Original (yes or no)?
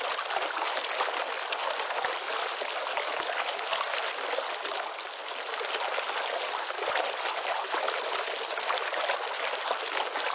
yes